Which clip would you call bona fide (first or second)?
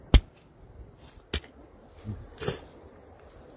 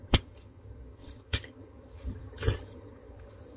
first